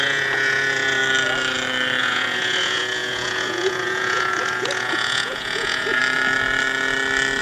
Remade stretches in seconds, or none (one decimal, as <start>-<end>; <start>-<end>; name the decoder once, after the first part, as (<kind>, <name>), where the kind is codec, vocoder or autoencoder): 0.0-1.0 (vocoder, Vocos); 2.0-6.0